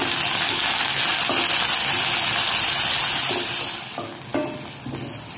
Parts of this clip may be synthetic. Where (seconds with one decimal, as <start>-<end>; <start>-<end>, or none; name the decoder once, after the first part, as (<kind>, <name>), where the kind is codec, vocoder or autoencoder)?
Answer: none